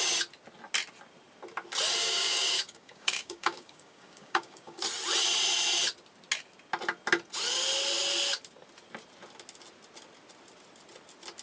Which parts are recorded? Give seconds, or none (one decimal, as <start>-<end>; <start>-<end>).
0.0-2.0; 4.8-11.4